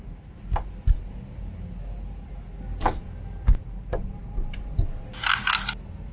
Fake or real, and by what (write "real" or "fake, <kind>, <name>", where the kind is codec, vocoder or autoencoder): real